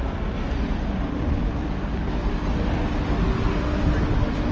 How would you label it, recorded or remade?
recorded